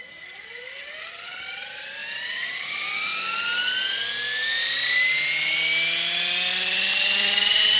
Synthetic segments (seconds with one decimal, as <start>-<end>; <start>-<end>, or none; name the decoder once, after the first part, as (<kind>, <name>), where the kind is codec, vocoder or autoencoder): 0.0-3.1 (vocoder, BigVGAN v2); 6.2-7.8

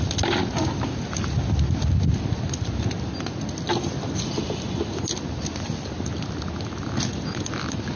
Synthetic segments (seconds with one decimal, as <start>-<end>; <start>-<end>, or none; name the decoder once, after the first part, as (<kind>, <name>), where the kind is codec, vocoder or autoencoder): none

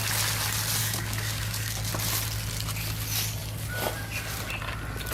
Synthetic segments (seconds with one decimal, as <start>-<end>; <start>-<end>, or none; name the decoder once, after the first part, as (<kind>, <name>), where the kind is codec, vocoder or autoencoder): 0.8-1.8 (codec, DAC)